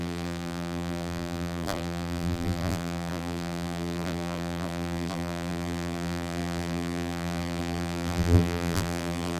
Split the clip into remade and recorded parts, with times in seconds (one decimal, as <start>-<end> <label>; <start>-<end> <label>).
0.0-9.4 remade